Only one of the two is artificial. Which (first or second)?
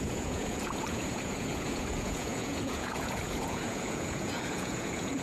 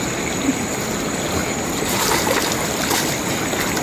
first